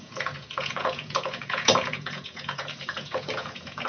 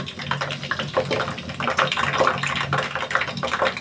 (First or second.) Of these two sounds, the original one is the second